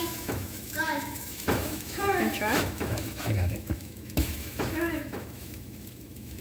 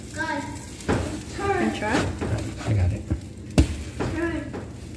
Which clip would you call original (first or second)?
second